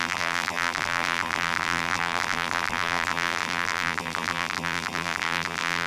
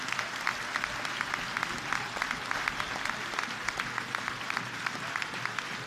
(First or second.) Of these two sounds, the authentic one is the second